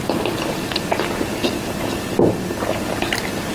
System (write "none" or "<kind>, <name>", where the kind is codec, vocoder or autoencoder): none